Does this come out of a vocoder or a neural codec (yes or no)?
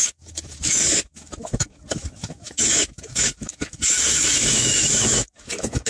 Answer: yes